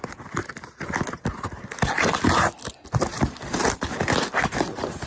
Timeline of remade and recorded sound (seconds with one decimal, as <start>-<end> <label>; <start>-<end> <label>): 0.0-5.1 recorded